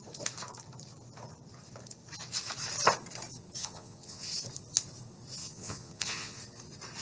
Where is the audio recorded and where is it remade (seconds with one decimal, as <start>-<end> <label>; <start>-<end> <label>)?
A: 0.0-3.6 recorded; 3.6-4.3 remade; 4.3-5.4 recorded; 5.4-6.4 remade; 6.4-7.0 recorded